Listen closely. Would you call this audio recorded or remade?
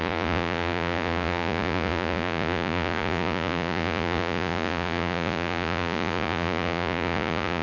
remade